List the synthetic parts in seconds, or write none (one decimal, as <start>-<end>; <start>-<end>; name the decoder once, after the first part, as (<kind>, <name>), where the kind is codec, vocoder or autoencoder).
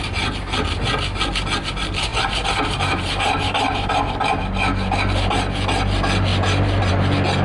2.1-3.9 (vocoder, BigVGAN v2); 6.3-6.9